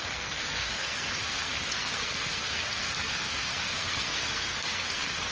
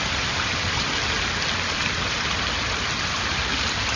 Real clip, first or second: second